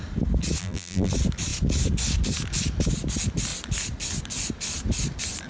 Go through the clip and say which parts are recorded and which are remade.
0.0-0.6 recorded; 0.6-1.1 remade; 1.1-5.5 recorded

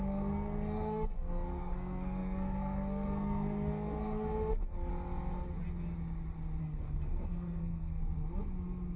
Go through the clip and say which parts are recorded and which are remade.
0.0-4.9 remade; 4.9-6.6 recorded; 6.6-8.0 remade; 8.0-9.0 recorded